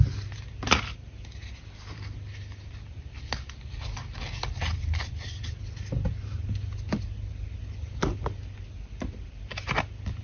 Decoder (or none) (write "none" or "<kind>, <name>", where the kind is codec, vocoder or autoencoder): none